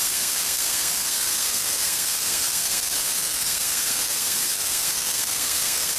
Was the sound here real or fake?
fake